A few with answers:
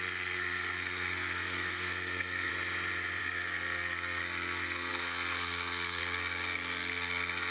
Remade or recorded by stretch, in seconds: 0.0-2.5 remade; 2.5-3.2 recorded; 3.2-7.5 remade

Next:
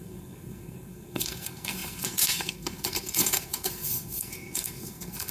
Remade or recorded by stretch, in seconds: 0.0-5.3 remade

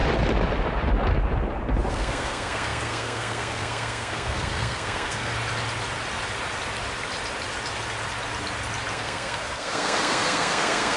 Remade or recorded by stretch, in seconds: 0.0-1.9 recorded; 1.9-5.3 remade; 5.3-8.9 recorded; 8.9-11.0 remade

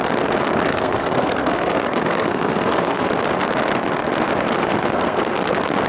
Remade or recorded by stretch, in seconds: 0.0-0.7 recorded; 0.7-3.1 remade; 3.1-4.6 recorded; 4.6-5.2 remade; 5.2-5.9 recorded

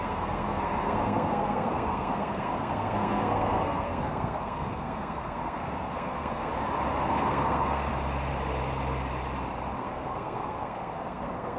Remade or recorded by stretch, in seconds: 0.0-6.5 remade; 6.5-7.1 recorded; 7.1-7.9 remade; 7.9-9.8 recorded; 9.8-11.6 remade

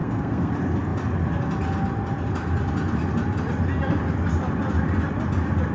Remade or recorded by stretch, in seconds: 0.0-0.5 remade; 0.5-5.7 recorded

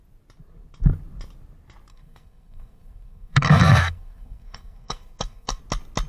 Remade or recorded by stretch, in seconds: 0.0-1.9 recorded; 1.9-5.6 remade; 5.6-6.1 recorded